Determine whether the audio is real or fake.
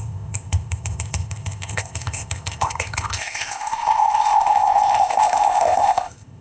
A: fake